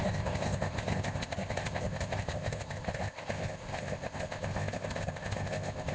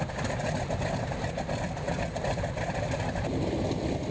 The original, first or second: second